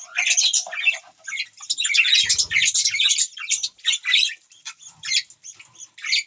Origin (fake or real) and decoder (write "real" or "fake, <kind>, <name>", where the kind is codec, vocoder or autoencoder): real